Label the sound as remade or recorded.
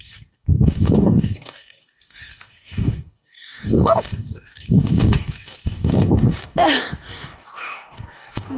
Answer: remade